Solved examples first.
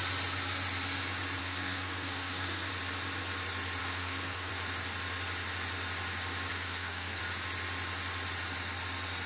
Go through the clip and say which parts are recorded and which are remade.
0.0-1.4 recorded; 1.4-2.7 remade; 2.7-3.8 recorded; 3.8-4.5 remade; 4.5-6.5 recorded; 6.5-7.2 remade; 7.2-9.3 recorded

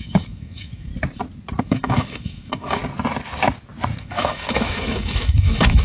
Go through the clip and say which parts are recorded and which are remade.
0.0-0.9 remade; 0.9-1.6 recorded; 1.6-2.8 remade; 2.8-4.0 recorded; 4.0-5.8 remade

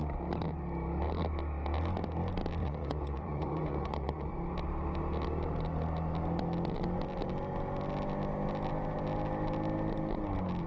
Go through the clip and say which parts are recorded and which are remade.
0.0-2.6 recorded; 2.6-4.3 remade; 4.3-10.7 recorded